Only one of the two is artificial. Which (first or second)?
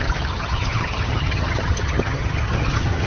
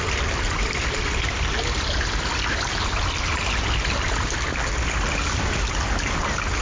first